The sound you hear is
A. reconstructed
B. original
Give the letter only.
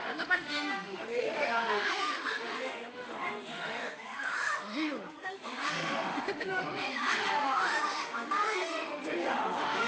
A